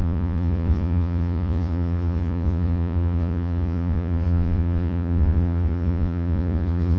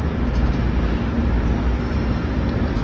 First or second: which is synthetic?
first